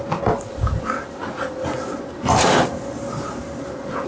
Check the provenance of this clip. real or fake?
real